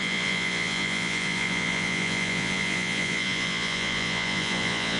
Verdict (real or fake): fake